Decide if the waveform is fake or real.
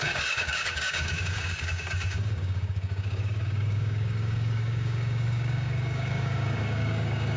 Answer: fake